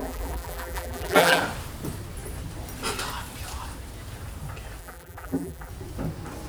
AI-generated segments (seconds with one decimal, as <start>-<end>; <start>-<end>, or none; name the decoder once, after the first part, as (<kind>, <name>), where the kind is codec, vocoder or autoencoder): 0.0-1.4 (vocoder, BigVGAN v2); 4.8-5.7